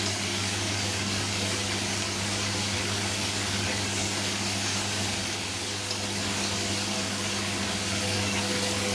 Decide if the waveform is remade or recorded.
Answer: remade